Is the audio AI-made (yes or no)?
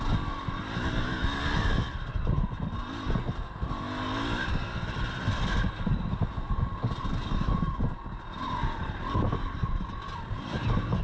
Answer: no